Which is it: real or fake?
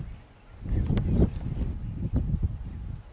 real